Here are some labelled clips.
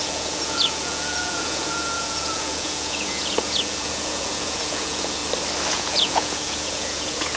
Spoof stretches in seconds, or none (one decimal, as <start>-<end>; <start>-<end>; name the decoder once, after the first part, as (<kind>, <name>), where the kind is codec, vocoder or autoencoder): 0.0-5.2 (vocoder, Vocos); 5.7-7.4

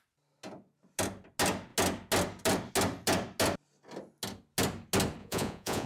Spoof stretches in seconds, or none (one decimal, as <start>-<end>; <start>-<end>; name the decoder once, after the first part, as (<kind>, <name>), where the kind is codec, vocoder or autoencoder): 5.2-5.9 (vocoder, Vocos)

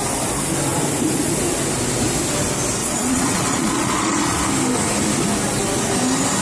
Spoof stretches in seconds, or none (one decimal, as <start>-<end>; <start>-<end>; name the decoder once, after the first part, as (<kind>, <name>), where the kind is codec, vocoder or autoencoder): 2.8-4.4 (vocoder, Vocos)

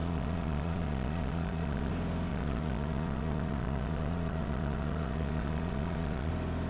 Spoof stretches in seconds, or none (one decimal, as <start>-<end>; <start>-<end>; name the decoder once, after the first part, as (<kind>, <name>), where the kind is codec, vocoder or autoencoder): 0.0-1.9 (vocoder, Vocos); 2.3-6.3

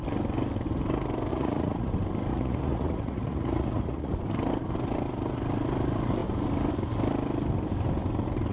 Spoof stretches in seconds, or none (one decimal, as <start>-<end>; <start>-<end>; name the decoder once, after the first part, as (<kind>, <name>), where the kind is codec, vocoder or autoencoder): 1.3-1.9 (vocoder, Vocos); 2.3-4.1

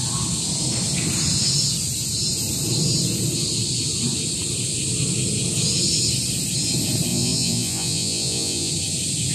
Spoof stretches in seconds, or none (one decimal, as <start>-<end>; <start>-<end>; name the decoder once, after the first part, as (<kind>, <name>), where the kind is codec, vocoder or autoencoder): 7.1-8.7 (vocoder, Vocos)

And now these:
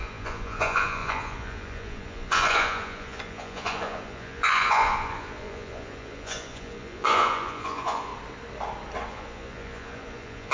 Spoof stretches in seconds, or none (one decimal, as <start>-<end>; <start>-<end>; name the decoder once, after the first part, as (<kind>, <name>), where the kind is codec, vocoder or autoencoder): 0.0-8.1 (vocoder, Vocos); 9.1-10.5